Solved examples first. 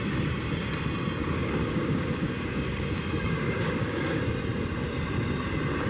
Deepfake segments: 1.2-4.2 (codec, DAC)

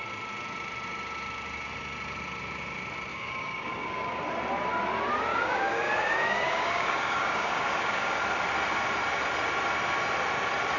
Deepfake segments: 3.1-4.2 (codec, DAC); 5.3-8.2

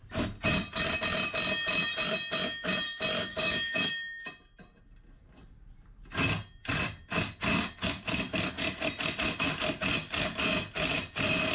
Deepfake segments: 3.3-3.9 (codec, DAC)

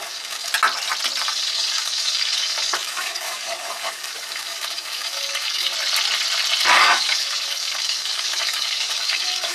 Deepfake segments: 0.0-0.5 (codec, DAC); 1.2-5.7; 6.8-9.5

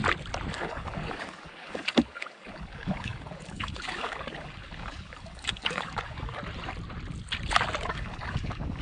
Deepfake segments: 0.5-6.4 (codec, DAC); 7.9-8.8

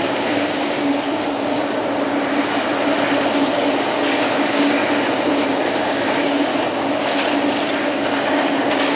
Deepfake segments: 0.0-1.6 (codec, DAC); 3.9-4.8; 5.8-6.5; 7.8-9.0

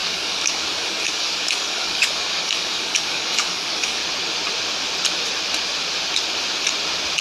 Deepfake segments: 0.0-4.0 (codec, DAC)

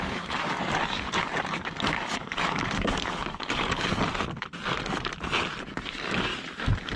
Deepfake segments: 0.0-3.9 (codec, DAC); 5.7-6.3